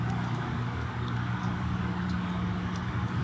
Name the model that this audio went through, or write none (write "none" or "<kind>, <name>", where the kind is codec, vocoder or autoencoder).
codec, DAC